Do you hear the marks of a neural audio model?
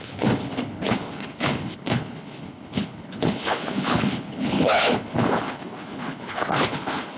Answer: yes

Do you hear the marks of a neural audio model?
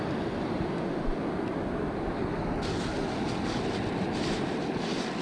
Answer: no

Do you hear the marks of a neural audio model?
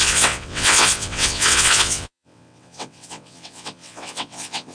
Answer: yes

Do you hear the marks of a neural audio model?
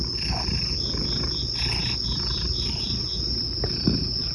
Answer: no